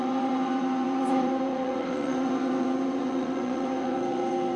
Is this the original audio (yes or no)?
no